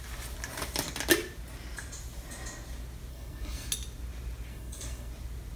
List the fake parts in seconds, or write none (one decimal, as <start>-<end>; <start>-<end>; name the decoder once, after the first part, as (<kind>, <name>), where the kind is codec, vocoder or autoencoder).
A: 3.1-3.7 (codec, SNAC); 4.5-5.1

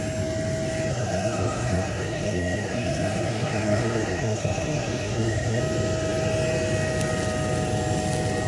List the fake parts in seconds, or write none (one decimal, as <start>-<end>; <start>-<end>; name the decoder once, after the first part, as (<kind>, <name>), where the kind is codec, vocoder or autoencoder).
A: 0.9-5.6 (codec, SNAC)

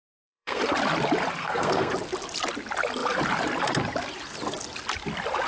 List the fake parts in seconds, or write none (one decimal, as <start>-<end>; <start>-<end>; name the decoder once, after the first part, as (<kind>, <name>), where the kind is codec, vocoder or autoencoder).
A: 0.0-0.6 (codec, SNAC); 1.4-1.9

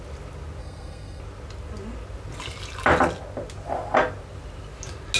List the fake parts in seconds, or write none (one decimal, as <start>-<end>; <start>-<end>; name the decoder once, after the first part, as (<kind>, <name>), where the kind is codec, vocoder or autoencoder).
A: 0.6-1.2 (codec, SNAC)

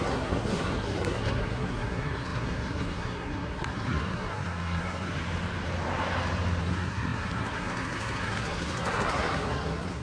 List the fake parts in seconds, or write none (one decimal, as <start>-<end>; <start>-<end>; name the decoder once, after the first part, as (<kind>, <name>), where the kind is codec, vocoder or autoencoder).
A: 0.0-5.1 (codec, SNAC); 6.6-10.0